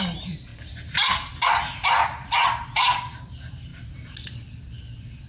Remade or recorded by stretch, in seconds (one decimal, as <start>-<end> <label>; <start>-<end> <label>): 0.0-0.5 remade; 0.5-1.5 recorded; 1.5-2.0 remade; 2.0-3.1 recorded; 3.1-3.7 remade; 3.7-5.3 recorded